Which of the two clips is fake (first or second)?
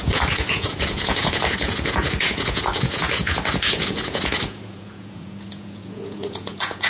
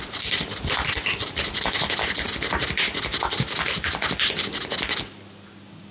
first